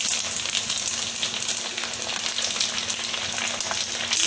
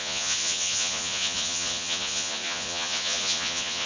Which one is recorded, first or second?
first